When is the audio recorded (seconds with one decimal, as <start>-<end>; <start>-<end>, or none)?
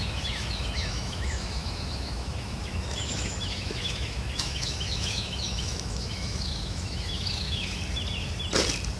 7.8-9.0